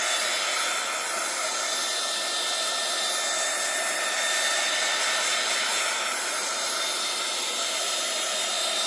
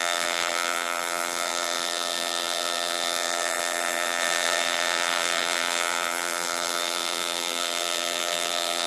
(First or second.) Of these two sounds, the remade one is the second